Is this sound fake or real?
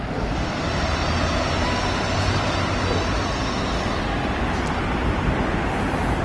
real